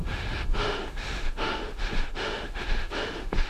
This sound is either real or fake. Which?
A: fake